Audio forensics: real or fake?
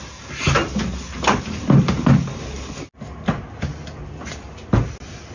real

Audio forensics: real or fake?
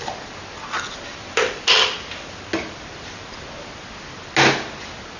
real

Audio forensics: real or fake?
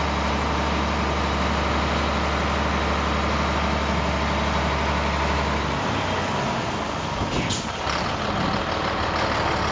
real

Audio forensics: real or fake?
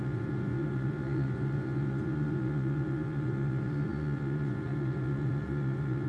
fake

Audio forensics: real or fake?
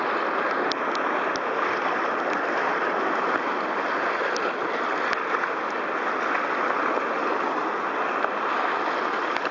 real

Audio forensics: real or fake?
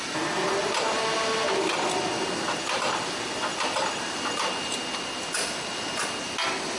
real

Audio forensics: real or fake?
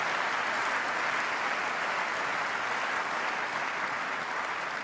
real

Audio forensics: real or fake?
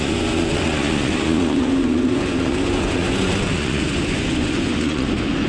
fake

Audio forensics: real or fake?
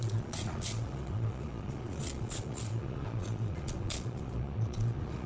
fake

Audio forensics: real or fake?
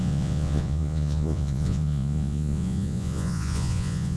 fake